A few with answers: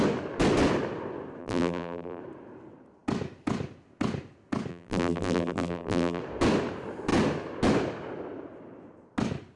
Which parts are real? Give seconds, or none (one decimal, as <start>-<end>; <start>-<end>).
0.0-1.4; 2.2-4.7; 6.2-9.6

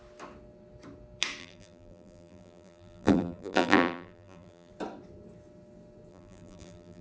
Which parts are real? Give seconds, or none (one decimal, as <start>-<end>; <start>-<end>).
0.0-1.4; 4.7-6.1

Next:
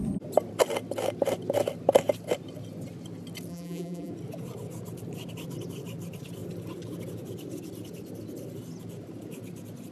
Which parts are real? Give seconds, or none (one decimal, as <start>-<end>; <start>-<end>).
0.0-3.5; 4.1-9.9

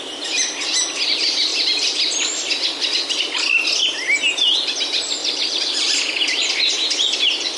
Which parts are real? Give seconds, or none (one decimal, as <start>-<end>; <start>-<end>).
0.0-5.2; 5.7-7.6

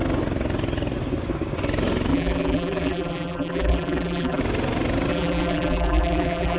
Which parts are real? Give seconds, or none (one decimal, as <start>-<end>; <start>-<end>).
0.0-2.1; 4.4-5.1

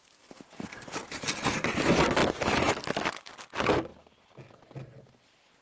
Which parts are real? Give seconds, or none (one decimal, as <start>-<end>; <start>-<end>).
0.0-5.6

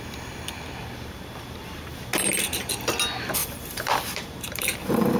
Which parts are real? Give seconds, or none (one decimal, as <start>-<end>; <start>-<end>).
0.0-0.8; 2.7-3.4